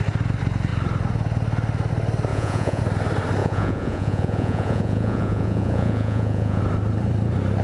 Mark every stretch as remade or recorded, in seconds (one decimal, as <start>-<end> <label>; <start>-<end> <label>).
0.0-2.3 recorded; 2.3-2.8 remade; 2.8-3.4 recorded; 3.4-6.6 remade; 6.6-7.6 recorded